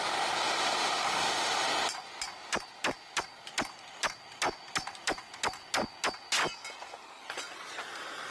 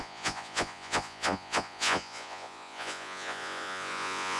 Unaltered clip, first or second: first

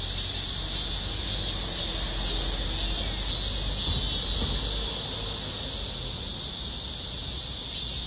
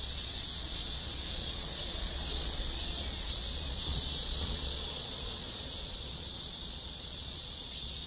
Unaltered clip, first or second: first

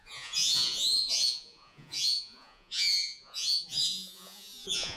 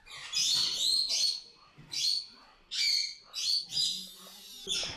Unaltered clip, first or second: second